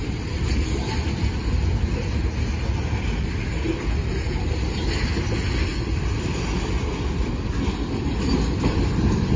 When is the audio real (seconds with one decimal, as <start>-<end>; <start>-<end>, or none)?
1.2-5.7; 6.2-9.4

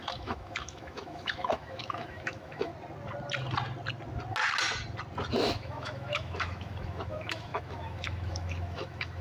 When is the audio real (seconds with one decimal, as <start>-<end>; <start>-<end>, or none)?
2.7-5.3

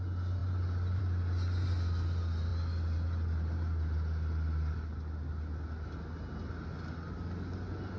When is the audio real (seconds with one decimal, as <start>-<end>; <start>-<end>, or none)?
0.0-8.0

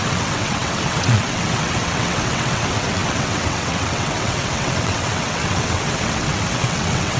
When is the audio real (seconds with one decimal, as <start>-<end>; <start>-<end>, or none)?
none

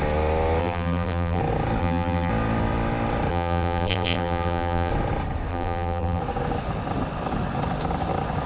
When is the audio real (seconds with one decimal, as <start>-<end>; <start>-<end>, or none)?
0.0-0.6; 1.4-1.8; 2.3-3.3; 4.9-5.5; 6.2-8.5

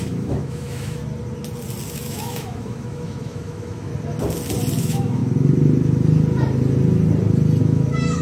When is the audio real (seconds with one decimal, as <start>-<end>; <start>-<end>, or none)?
1.0-1.9; 3.9-4.8; 5.2-7.6

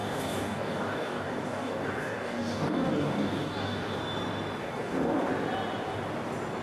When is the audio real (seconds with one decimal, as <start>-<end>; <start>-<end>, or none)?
4.0-4.6; 5.3-6.6